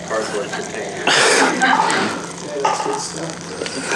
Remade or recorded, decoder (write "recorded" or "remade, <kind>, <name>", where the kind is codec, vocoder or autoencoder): recorded